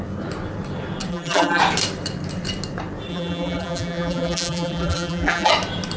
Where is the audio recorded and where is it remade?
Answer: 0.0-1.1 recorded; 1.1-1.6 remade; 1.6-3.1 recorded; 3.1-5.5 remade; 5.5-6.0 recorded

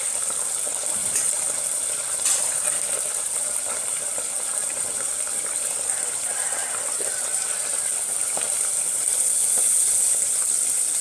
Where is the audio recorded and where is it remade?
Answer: 0.0-11.0 remade

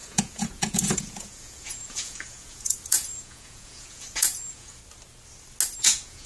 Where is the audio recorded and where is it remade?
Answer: 0.0-4.8 remade; 4.8-5.8 recorded; 5.8-6.3 remade

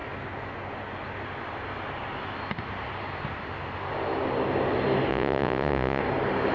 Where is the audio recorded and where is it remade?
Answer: 0.0-5.1 recorded; 5.1-6.0 remade; 6.0-6.5 recorded